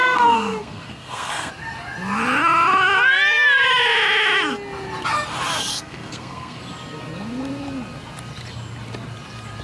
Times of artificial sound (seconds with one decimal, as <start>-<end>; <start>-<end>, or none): 0.0-1.5; 5.7-6.6